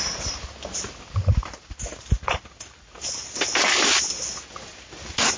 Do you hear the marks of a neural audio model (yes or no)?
no